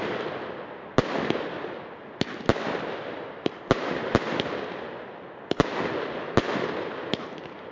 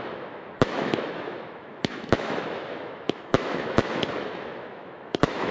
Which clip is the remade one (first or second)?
second